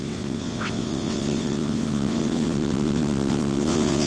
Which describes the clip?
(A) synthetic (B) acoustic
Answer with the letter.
A